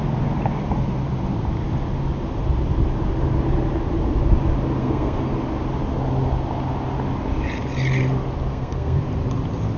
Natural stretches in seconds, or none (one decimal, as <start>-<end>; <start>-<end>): 0.0-4.8; 5.3-8.5; 9.0-9.8